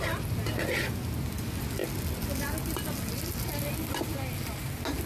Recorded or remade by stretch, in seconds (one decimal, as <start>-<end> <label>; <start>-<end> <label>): 0.0-5.1 recorded

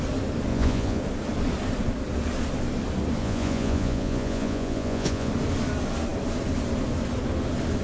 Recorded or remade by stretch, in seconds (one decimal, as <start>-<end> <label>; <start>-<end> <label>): 0.0-0.5 recorded; 0.5-1.0 remade; 1.0-3.2 recorded; 3.2-5.3 remade; 5.3-7.8 recorded

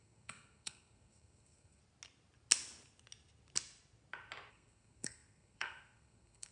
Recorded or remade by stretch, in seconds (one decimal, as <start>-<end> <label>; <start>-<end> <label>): 0.0-1.8 remade; 1.8-4.5 recorded; 4.5-6.5 remade

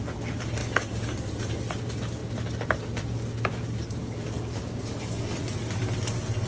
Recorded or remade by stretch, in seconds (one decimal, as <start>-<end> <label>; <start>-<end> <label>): 0.0-0.6 recorded; 0.6-1.6 remade; 1.6-4.0 recorded; 4.0-5.4 remade; 5.4-6.5 recorded

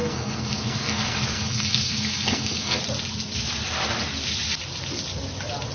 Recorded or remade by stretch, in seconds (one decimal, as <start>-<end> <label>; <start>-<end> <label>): 0.0-2.8 remade; 2.8-5.7 recorded

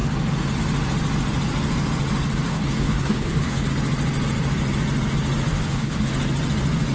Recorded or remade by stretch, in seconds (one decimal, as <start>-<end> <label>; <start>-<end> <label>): 0.0-2.5 recorded; 2.5-3.7 remade; 3.7-5.5 recorded; 5.5-6.1 remade; 6.1-6.9 recorded